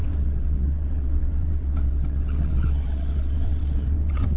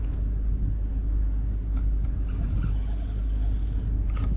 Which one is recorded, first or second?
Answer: second